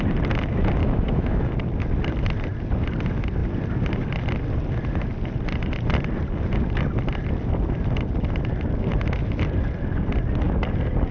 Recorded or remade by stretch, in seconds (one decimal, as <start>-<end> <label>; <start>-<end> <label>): 0.0-0.8 recorded; 0.8-1.5 remade; 1.5-11.1 recorded